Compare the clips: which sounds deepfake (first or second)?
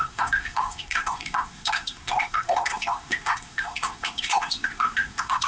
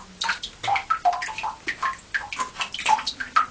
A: first